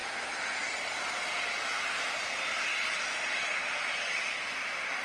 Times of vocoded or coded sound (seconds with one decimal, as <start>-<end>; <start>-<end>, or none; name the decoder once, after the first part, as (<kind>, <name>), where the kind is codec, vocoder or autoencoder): none